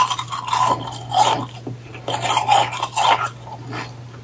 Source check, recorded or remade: recorded